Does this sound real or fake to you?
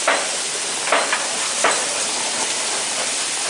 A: real